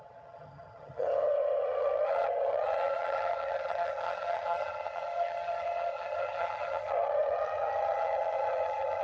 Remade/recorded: remade